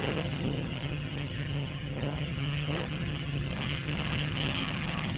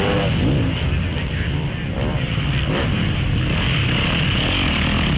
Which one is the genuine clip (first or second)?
second